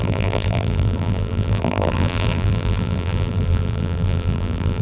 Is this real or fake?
fake